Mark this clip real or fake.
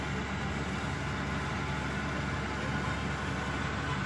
real